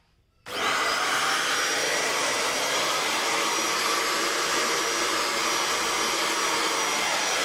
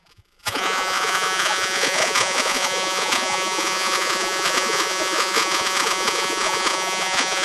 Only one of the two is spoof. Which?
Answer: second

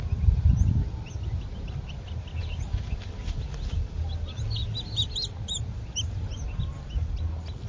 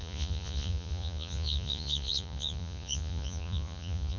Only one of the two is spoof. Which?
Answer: second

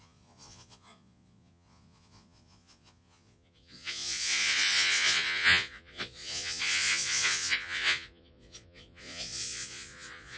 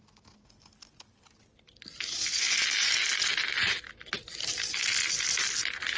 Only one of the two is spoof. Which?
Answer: first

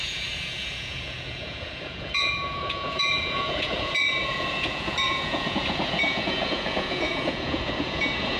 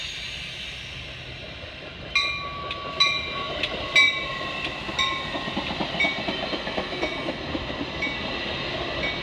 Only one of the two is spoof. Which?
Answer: first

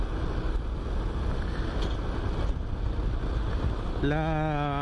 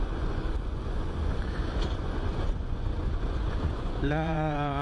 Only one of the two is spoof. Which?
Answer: second